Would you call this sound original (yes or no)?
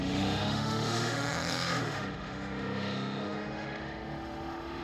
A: no